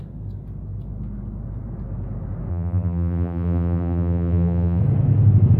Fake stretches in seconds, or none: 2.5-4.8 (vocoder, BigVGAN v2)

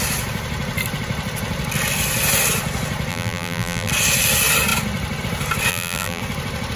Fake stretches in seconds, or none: 3.1-3.9 (vocoder, BigVGAN v2); 5.7-6.2

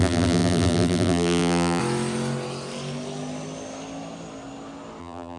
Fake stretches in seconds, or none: 0.0-1.8 (vocoder, BigVGAN v2); 5.0-5.4

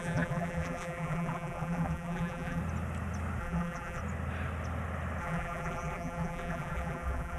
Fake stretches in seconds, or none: 0.0-2.6 (vocoder, BigVGAN v2); 3.4-4.0; 5.2-7.4

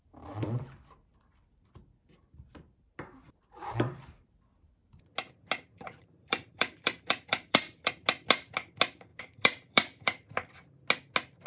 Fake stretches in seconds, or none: 5.7-7.9 (vocoder, BigVGAN v2); 9.1-10.5

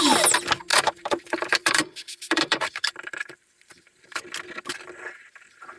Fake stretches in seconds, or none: 0.7-4.2 (vocoder, BigVGAN v2)

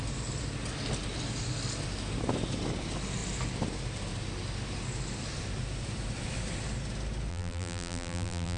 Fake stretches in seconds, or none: 7.3-8.6 (vocoder, BigVGAN v2)